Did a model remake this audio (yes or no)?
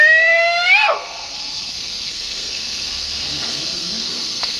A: yes